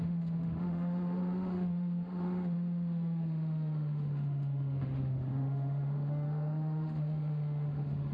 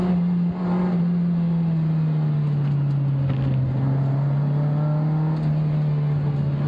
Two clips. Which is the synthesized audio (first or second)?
first